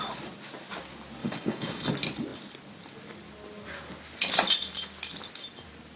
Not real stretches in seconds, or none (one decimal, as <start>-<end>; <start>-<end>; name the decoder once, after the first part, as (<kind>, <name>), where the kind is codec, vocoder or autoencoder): 1.2-1.9 (codec, DAC)